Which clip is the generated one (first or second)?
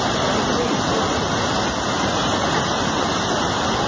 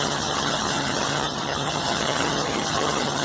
second